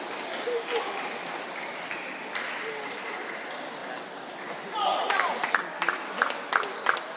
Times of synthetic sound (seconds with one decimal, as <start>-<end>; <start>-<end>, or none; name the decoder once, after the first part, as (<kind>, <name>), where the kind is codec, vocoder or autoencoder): none